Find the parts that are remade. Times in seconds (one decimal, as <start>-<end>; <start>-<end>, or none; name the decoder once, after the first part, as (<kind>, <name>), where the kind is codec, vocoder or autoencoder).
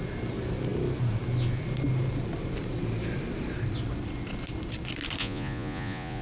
5.2-6.2 (vocoder, Vocos)